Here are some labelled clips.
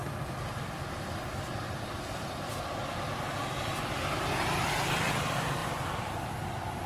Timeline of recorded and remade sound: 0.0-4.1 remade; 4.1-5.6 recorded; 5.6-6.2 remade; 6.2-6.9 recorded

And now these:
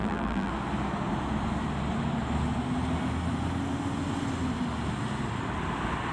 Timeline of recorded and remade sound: 0.0-0.5 remade; 0.5-6.1 recorded

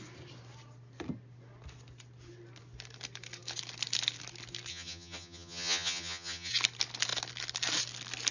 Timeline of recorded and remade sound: 0.0-4.7 recorded; 4.7-6.5 remade; 6.5-8.3 recorded